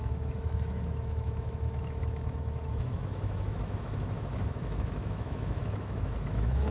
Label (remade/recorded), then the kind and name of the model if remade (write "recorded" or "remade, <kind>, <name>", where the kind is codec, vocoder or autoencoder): remade, autoencoder, DAC-VAE